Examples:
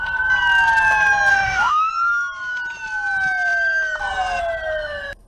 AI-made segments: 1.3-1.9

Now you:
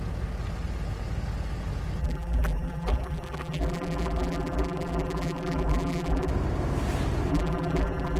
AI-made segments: 2.0-6.3; 7.3-8.2

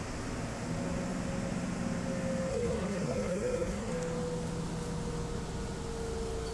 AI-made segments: 2.5-3.9

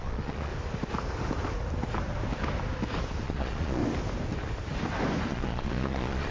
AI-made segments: 0.0-0.5; 3.2-3.8; 5.3-6.3

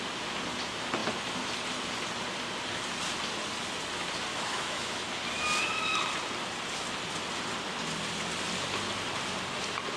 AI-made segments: 4.3-5.1

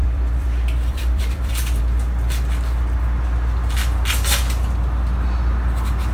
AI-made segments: 0.0-1.8